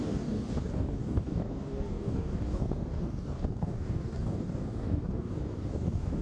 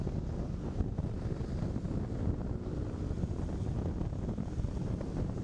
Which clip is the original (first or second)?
second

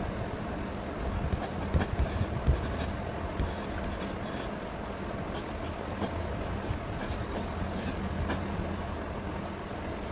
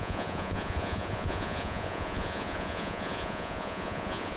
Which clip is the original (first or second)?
first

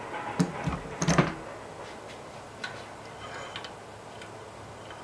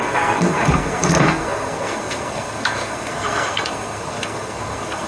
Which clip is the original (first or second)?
first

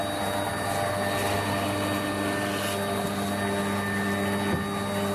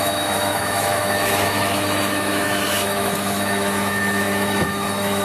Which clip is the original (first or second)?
first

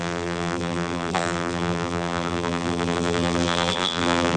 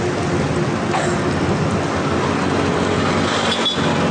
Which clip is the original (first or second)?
second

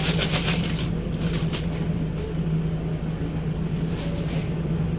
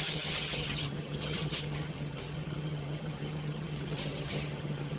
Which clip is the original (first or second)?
first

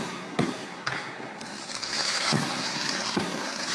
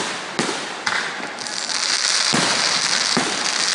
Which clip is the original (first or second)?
second